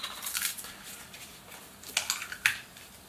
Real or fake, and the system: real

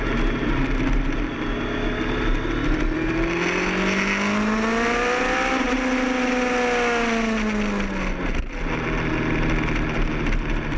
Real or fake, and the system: real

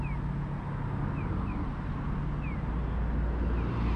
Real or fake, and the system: real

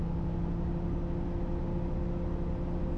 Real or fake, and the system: real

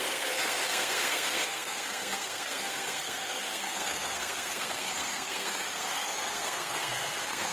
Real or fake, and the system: fake, codec, SNAC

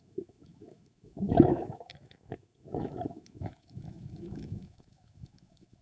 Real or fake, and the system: fake, autoencoder, DAC-VAE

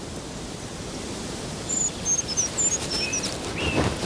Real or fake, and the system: real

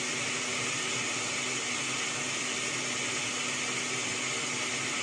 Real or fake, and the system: real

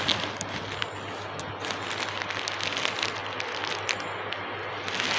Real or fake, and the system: real